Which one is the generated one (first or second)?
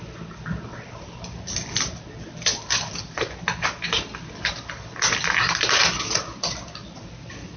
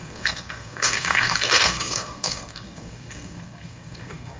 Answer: second